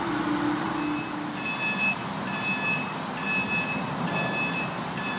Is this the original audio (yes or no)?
yes